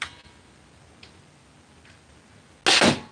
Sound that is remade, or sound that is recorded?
recorded